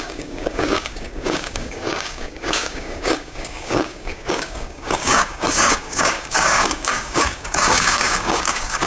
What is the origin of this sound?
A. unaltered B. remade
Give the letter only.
B